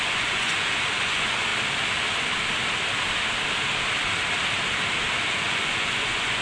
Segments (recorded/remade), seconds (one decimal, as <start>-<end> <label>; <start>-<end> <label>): 0.0-1.5 remade; 1.5-5.3 recorded; 5.3-6.4 remade